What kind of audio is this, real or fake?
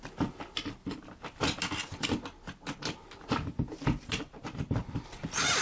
real